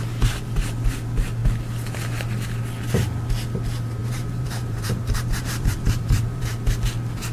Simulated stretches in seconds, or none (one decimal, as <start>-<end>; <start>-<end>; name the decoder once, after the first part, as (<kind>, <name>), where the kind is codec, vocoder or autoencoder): 4.0-6.4 (vocoder, BigVGAN v2)